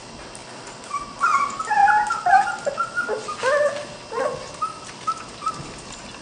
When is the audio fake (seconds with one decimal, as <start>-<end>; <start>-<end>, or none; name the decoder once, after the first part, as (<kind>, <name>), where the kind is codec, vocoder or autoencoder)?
none